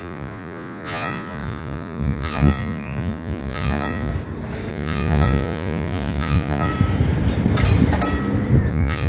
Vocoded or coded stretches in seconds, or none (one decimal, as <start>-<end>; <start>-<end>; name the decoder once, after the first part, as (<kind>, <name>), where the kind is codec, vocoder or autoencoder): 0.0-4.1 (vocoder, Vocos); 4.7-6.7; 8.7-9.1